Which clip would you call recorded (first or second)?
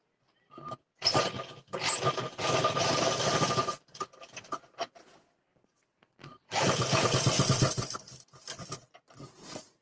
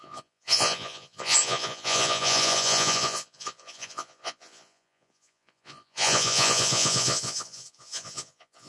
first